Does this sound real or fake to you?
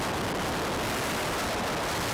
real